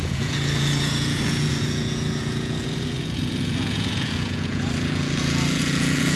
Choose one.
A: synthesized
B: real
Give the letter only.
A